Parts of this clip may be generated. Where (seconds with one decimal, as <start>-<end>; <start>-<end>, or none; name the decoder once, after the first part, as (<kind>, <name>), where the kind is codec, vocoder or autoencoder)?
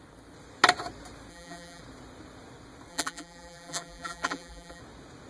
1.3-1.8 (vocoder, BigVGAN v2); 2.9-4.8